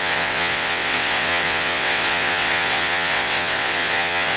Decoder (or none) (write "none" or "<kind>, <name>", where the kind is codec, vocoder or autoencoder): vocoder, WaveNeXt